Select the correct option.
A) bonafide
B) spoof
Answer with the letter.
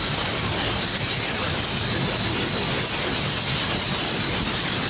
A